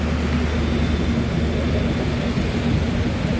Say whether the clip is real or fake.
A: real